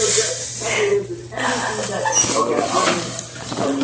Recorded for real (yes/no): yes